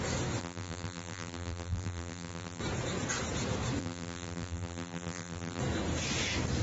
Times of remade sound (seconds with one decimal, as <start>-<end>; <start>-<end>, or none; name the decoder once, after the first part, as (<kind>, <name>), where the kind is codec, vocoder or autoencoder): 0.4-2.6 (vocoder, BigVGAN v2); 3.8-5.6